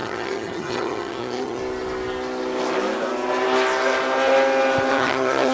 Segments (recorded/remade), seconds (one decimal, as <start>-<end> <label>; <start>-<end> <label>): 0.0-1.6 remade; 1.6-4.9 recorded; 4.9-5.5 remade